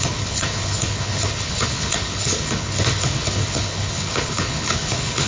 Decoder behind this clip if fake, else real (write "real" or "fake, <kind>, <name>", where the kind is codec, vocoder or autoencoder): fake, codec, HILCodec